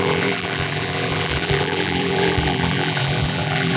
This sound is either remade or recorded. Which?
remade